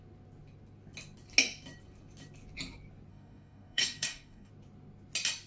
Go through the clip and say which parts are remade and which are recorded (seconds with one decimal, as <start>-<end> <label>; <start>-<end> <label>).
0.0-3.1 recorded; 3.1-4.5 remade; 4.5-5.5 recorded